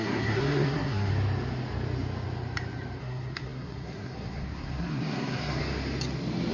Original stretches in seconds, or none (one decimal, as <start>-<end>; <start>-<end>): 1.1-3.0; 5.6-6.5